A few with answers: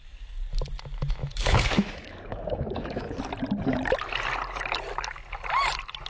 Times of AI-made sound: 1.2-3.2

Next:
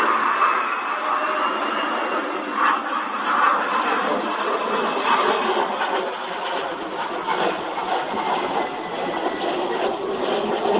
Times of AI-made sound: none